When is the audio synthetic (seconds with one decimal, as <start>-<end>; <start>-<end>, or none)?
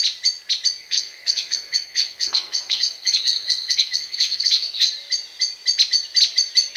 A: 0.8-4.9